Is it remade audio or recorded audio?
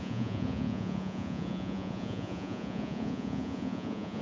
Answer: remade